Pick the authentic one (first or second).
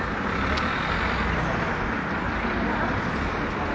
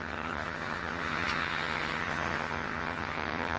first